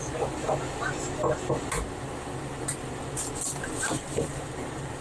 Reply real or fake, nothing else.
real